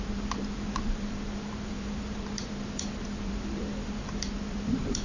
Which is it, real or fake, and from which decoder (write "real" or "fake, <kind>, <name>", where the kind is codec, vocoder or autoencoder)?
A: fake, vocoder, BigVGAN v2